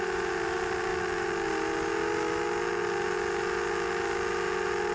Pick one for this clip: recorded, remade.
recorded